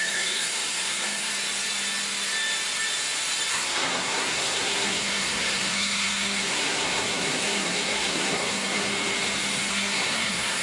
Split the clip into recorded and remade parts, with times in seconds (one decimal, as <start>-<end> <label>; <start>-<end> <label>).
0.0-1.3 remade; 1.3-3.5 recorded; 3.5-8.9 remade; 8.9-9.7 recorded; 9.7-10.6 remade